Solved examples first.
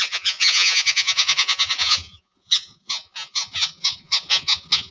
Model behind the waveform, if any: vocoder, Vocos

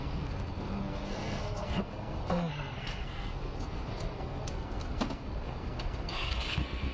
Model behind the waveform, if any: codec, SNAC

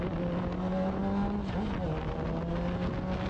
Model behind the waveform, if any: none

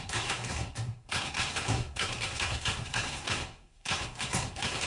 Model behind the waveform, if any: codec, SNAC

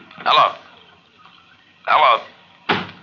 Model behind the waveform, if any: none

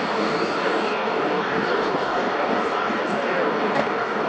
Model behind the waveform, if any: codec, DAC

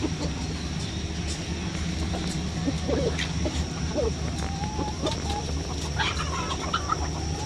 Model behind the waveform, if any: none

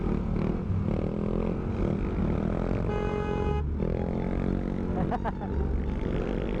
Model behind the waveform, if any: none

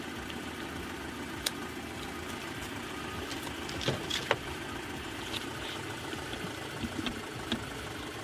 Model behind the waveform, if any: none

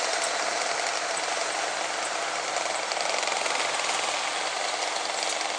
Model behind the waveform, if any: none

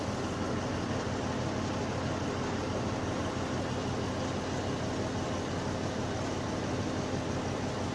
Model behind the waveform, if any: none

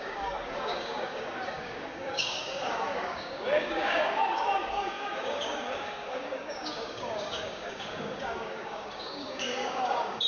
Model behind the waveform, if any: codec, DAC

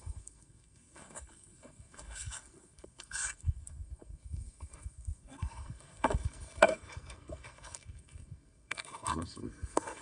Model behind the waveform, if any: codec, SNAC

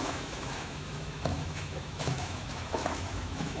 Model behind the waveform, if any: autoencoder, DAC-VAE